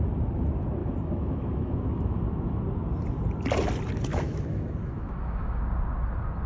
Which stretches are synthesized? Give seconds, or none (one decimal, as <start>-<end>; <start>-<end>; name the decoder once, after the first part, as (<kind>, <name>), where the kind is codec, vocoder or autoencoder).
0.8-2.6 (autoencoder, DAC-VAE); 4.1-5.6